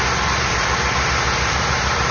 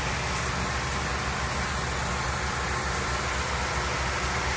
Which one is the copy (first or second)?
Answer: first